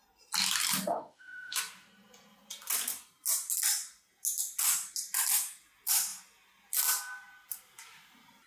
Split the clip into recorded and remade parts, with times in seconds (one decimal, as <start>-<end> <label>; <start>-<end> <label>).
0.0-0.9 recorded; 0.9-1.6 remade; 1.6-8.5 recorded